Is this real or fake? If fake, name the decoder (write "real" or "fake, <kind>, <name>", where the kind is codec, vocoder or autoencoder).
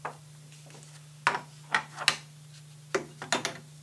real